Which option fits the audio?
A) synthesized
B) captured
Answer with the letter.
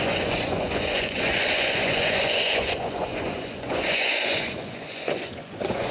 A